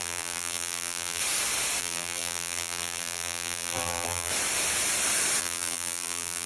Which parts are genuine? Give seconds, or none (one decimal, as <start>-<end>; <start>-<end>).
1.2-1.8; 4.3-5.4